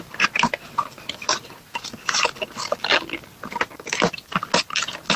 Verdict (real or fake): real